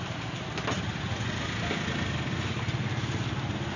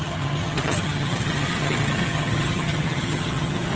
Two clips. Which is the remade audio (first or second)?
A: second